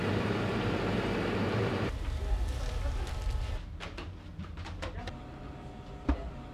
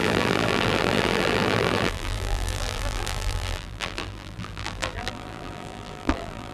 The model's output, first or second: second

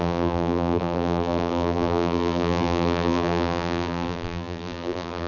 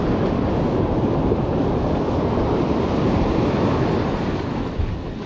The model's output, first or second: first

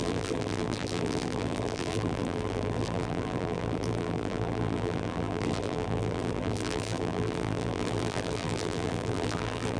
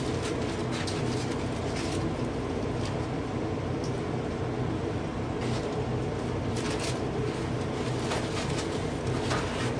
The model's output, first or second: first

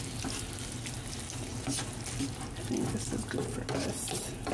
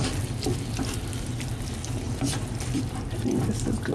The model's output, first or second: second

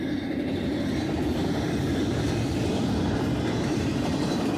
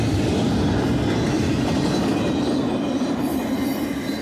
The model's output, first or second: first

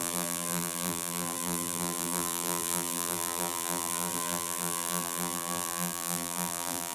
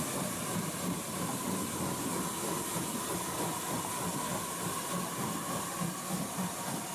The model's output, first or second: first